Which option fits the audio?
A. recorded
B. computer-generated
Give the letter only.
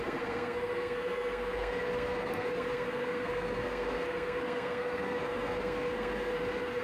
B